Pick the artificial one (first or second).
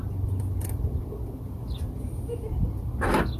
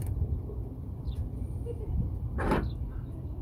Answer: second